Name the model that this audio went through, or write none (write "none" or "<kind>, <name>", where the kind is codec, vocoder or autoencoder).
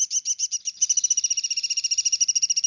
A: none